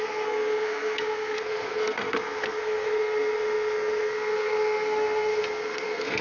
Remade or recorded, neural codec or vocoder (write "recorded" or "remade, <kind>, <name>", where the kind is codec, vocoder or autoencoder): remade, codec, SNAC